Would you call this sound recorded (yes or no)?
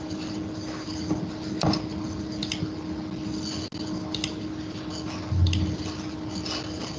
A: yes